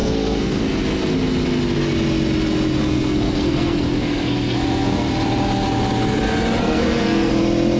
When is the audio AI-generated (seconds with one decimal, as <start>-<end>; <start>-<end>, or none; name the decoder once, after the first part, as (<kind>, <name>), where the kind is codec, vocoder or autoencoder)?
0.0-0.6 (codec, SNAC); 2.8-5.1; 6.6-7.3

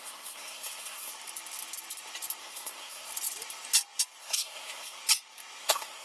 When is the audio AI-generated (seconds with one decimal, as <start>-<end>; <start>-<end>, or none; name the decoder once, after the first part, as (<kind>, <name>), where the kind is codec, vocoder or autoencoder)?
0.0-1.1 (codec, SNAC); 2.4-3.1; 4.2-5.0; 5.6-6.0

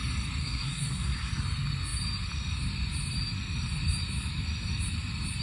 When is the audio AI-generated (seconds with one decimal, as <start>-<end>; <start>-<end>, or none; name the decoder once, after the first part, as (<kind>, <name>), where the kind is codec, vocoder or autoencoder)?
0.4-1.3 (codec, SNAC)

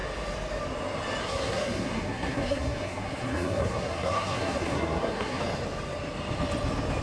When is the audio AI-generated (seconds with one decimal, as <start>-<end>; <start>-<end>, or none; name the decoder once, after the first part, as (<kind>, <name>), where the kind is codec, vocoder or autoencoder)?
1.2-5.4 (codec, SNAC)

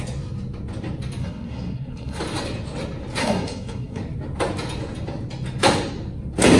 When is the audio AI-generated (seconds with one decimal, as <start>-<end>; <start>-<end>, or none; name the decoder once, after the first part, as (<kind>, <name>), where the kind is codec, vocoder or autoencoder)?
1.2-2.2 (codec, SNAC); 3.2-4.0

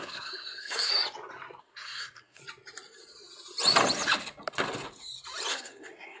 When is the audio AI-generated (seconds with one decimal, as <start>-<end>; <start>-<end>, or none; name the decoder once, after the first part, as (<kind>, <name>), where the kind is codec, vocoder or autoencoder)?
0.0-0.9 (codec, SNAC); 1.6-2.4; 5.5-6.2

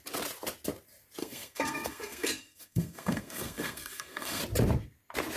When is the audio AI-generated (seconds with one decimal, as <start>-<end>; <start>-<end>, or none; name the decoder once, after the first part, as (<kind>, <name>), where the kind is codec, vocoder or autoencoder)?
1.2-4.4 (codec, SNAC)